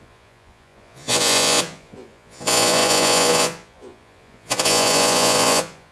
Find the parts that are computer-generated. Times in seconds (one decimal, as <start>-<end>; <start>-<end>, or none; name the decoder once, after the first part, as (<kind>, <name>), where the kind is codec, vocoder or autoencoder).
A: 0.0-5.9 (vocoder, Vocos)